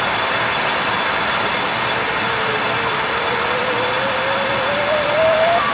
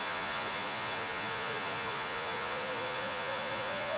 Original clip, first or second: first